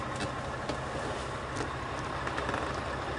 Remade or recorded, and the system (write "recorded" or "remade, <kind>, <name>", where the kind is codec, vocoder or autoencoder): recorded